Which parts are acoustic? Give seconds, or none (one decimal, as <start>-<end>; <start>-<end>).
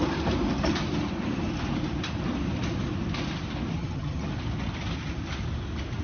0.0-3.8; 4.3-6.0